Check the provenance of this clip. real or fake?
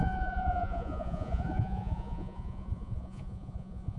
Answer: fake